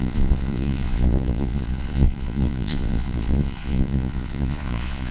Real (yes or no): no